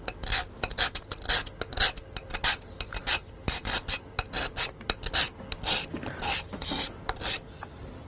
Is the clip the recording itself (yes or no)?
yes